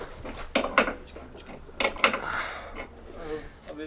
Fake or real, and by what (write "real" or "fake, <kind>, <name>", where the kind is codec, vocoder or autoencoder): real